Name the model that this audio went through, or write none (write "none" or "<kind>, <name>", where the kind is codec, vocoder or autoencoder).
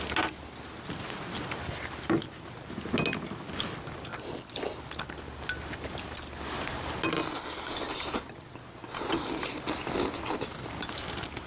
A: none